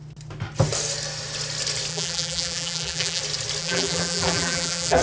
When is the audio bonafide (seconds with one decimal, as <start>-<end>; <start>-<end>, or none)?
0.0-1.9; 3.2-3.6